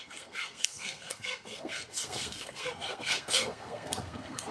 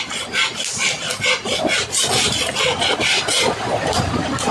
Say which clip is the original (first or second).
second